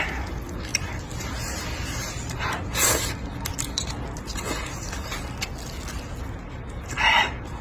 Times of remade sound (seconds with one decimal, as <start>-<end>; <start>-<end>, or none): none